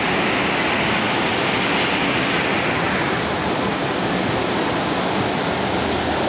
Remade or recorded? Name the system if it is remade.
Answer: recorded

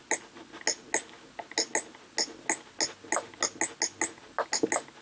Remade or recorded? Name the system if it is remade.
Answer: recorded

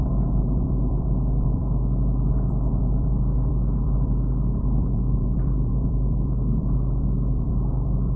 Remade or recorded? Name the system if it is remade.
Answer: remade, vocoder, BigVGAN v2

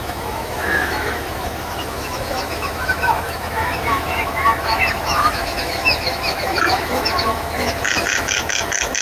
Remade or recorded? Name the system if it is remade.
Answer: remade, autoencoder, DAC-VAE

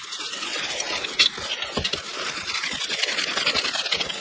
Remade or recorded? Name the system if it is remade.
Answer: recorded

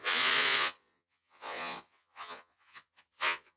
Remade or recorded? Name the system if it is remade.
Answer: remade, vocoder, Vocos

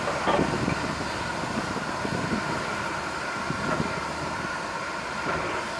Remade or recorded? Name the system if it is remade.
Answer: recorded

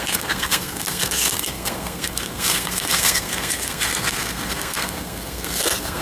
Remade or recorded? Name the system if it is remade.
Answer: remade, codec, SNAC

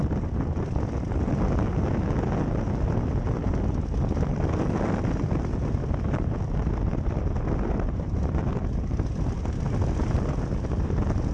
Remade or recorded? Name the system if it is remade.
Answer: recorded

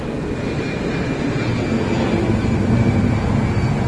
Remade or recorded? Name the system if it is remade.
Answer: recorded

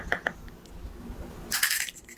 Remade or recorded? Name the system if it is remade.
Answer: recorded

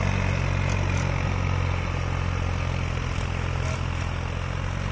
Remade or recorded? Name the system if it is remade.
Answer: recorded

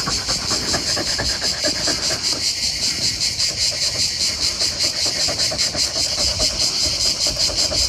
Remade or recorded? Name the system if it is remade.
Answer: remade, vocoder, BigVGAN v2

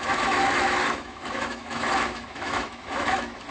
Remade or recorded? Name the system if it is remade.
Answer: remade, autoencoder, DAC-VAE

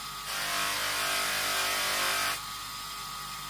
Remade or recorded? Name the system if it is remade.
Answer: recorded